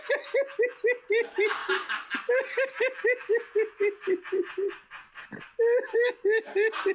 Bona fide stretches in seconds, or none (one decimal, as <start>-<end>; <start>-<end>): 0.0-6.9